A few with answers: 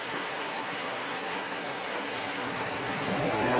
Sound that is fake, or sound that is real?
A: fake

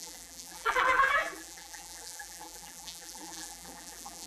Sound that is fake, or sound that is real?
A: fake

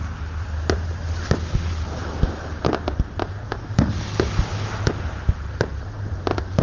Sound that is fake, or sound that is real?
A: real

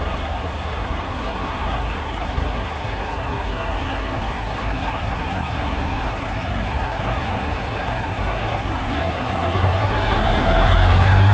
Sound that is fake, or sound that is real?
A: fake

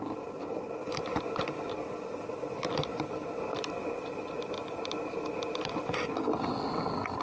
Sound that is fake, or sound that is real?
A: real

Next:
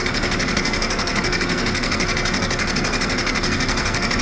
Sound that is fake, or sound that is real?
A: fake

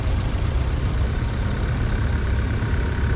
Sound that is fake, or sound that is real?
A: fake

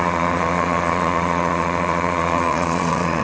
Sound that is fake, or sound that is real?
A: fake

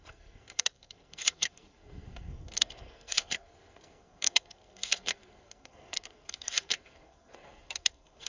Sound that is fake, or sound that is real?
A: fake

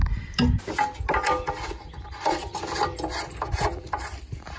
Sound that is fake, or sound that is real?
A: real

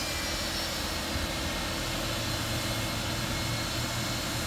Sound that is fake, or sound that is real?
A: real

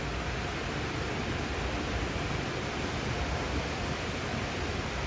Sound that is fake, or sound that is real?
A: real